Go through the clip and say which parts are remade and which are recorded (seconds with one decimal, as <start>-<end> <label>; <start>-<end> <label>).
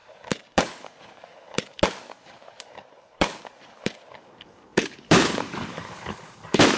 0.0-6.8 remade